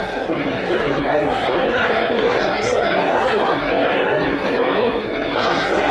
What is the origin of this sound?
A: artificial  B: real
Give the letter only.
A